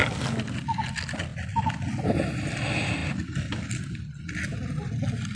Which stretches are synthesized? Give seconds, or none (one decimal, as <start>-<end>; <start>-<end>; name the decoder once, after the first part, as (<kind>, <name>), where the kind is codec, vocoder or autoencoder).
none